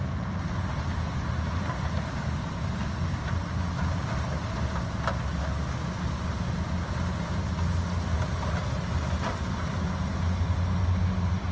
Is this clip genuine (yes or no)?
yes